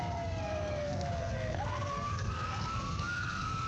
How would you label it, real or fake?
fake